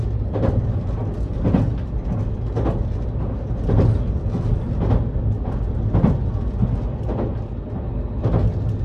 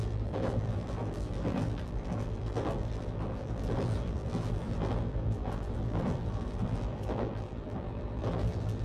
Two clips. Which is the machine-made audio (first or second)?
second